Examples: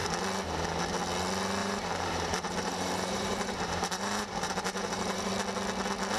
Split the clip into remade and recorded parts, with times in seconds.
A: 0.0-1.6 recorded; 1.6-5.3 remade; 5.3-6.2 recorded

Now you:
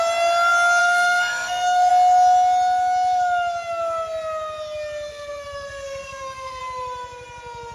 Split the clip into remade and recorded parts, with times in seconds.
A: 0.0-0.8 recorded; 0.8-1.9 remade; 1.9-5.1 recorded; 5.1-6.6 remade; 6.6-7.7 recorded

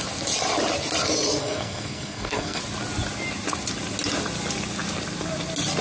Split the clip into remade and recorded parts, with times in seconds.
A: 0.0-1.4 recorded; 1.4-2.6 remade; 2.6-5.8 recorded

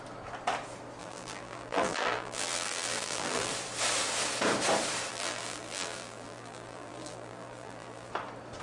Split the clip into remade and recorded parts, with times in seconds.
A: 0.0-1.0 recorded; 1.0-3.5 remade; 3.5-5.1 recorded; 5.1-8.1 remade; 8.1-8.6 recorded

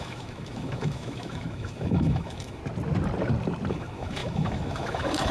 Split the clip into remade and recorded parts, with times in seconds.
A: 0.0-2.6 remade; 2.6-3.7 recorded; 3.7-5.3 remade

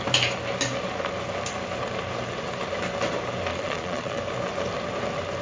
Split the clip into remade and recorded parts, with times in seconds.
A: 0.0-3.5 recorded; 3.5-4.2 remade; 4.2-5.4 recorded

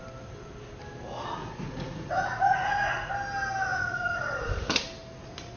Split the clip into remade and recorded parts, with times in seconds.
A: 0.0-1.4 recorded; 1.4-3.1 remade; 3.1-3.7 recorded; 3.7-4.7 remade; 4.7-5.6 recorded